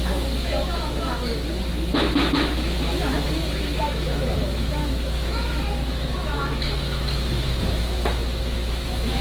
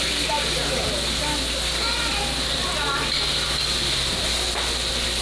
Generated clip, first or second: first